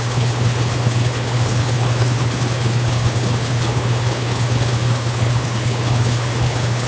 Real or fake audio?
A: fake